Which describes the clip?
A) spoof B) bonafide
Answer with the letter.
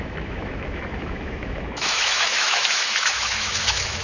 A